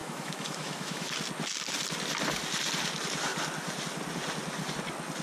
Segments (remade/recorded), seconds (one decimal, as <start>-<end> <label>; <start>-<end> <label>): 0.0-1.1 remade; 1.1-5.2 recorded